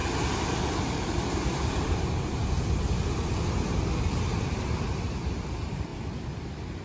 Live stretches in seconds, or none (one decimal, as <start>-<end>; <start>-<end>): 2.4-5.5; 5.9-6.8